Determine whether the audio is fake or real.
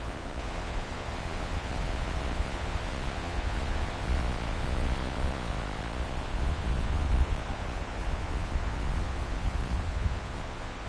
fake